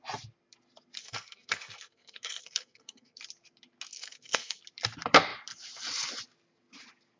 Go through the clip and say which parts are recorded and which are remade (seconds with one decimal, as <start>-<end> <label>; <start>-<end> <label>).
0.0-1.0 recorded; 1.0-3.2 remade; 3.2-3.9 recorded; 3.9-4.6 remade; 4.6-7.2 recorded